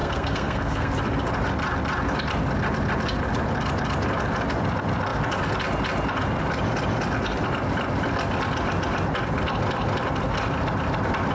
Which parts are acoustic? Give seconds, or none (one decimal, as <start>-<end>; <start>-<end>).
0.9-11.3